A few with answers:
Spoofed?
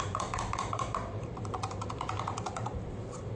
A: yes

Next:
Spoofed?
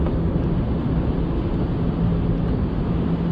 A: no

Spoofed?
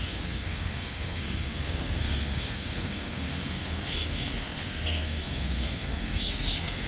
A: yes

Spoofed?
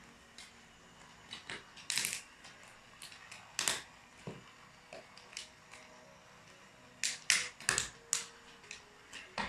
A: no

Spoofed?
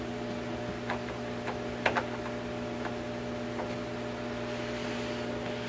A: no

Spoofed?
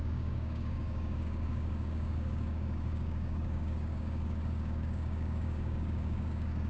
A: yes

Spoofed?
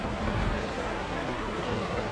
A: yes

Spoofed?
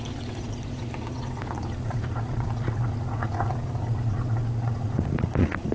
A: yes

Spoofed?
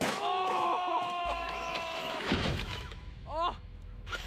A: yes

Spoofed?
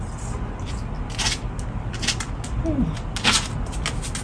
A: no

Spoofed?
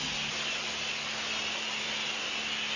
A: no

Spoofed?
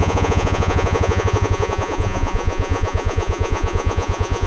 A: yes